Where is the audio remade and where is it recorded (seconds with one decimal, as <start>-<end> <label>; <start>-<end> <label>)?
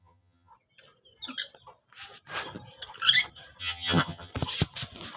0.0-0.5 remade; 0.5-3.6 recorded; 3.6-4.3 remade; 4.3-5.2 recorded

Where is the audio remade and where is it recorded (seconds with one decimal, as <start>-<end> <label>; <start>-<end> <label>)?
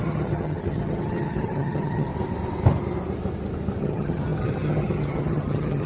0.0-2.1 remade; 2.1-3.8 recorded; 3.8-5.9 remade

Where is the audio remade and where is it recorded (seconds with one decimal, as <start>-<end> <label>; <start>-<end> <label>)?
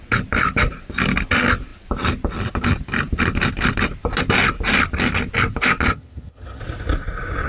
0.0-5.9 recorded; 5.9-6.6 remade; 6.6-7.5 recorded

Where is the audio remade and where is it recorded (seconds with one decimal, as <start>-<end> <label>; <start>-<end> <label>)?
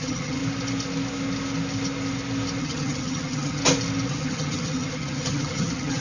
0.0-0.4 remade; 0.4-2.6 recorded; 2.6-3.6 remade; 3.6-4.1 recorded; 4.1-6.0 remade